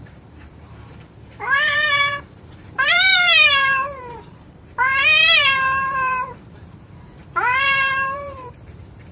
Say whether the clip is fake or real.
fake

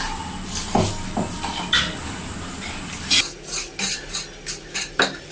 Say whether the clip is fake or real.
real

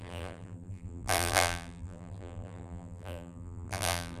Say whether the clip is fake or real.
fake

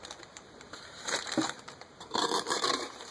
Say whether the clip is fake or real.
fake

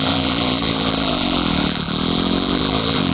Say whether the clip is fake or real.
fake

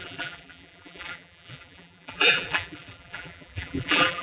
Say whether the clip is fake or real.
fake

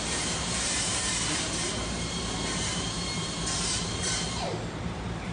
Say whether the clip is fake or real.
fake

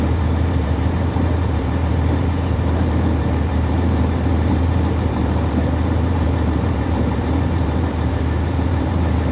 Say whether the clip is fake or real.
fake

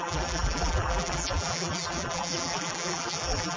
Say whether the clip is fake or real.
fake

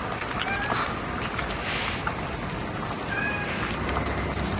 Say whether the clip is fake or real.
real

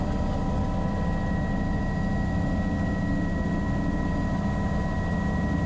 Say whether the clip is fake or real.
real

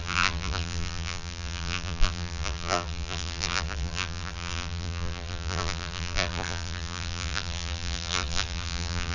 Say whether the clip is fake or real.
fake